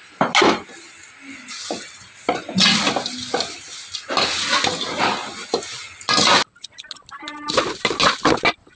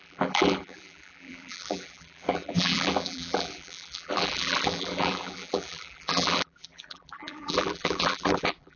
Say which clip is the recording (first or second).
first